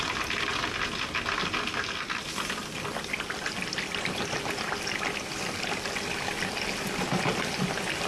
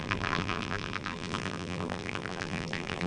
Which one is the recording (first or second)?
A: first